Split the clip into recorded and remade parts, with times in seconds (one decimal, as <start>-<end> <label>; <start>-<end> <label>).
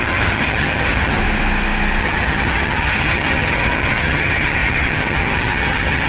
0.0-1.2 remade; 1.2-2.0 recorded; 2.0-6.1 remade